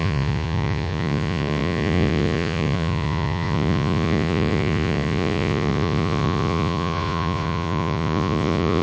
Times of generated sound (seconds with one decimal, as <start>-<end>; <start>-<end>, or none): 0.0-8.8